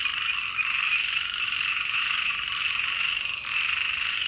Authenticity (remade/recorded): recorded